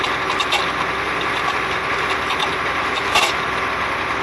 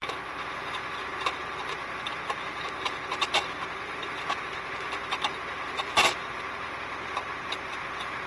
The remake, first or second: second